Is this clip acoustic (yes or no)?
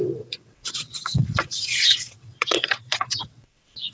no